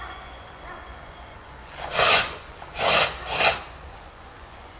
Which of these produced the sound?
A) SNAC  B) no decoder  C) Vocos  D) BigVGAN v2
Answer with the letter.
C